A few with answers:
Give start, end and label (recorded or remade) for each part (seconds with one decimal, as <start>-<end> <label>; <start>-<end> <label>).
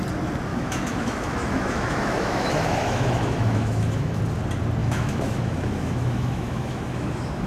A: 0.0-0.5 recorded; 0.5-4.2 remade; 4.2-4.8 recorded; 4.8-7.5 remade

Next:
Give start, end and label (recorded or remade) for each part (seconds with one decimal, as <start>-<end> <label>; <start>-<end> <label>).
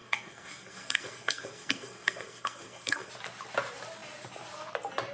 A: 0.0-3.1 remade; 3.1-5.1 recorded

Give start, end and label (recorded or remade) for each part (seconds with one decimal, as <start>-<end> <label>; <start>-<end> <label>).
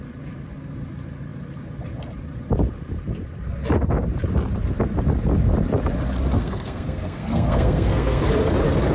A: 0.0-6.4 recorded; 6.4-8.2 remade; 8.2-8.9 recorded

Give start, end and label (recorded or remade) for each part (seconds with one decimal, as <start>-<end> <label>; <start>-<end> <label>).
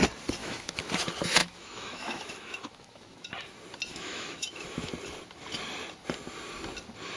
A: 0.0-0.4 recorded; 0.4-0.9 remade; 0.9-1.4 recorded; 1.4-3.3 remade; 3.3-3.9 recorded; 3.9-4.9 remade; 4.9-7.2 recorded